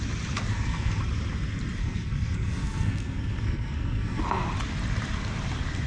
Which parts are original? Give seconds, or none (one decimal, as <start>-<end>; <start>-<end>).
0.0-0.5; 1.0-1.8; 4.2-5.9

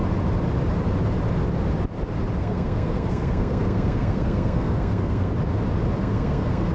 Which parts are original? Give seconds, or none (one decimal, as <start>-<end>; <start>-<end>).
0.0-2.4; 5.3-6.0

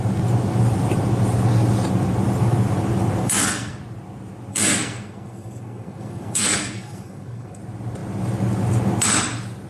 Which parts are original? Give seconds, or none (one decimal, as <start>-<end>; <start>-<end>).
0.0-3.2; 3.8-4.5; 7.6-9.7

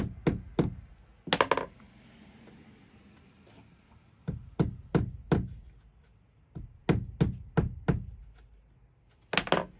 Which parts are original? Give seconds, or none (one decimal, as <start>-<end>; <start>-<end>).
0.0-9.8